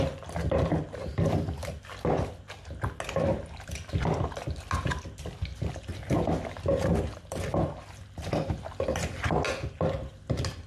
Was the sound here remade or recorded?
recorded